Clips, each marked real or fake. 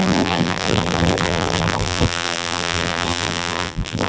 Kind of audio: fake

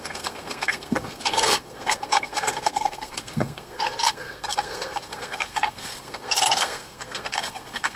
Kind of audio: fake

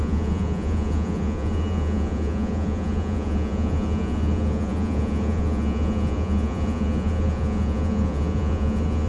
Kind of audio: fake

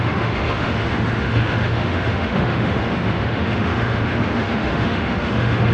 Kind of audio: fake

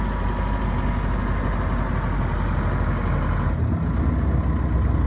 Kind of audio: real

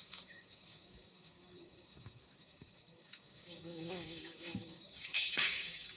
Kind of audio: fake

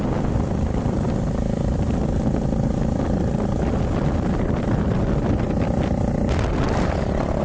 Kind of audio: real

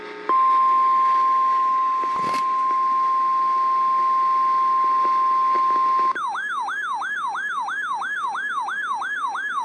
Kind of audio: real